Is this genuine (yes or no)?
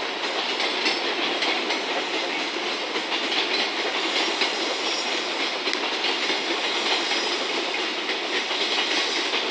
yes